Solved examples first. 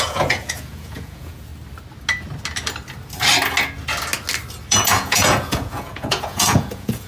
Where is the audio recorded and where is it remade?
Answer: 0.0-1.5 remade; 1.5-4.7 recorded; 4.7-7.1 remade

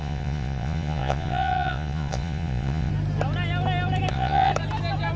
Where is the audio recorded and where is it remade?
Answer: 0.0-2.9 remade; 2.9-4.1 recorded; 4.1-4.5 remade; 4.5-5.2 recorded

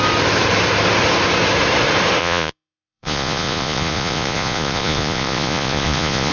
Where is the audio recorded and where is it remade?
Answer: 0.0-2.2 recorded; 2.2-6.3 remade

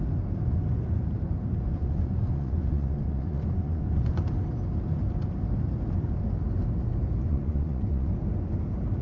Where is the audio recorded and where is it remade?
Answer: 0.0-1.8 recorded; 1.8-4.2 remade; 4.2-7.2 recorded; 7.2-8.1 remade; 8.1-9.0 recorded